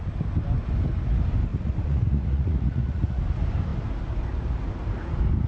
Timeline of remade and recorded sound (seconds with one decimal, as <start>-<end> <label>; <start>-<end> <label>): 0.0-1.5 recorded; 1.5-3.2 remade; 3.2-5.5 recorded